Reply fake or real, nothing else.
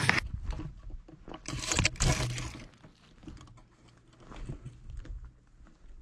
real